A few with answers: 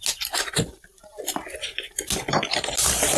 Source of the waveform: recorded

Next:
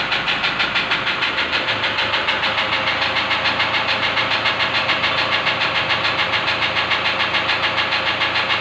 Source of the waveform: recorded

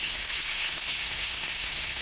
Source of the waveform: remade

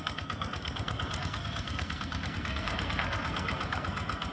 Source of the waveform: remade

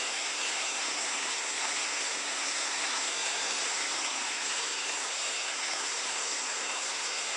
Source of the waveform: remade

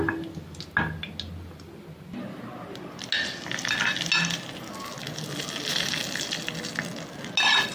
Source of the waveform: recorded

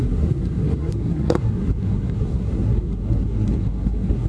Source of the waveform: remade